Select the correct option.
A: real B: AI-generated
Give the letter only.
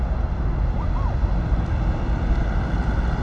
A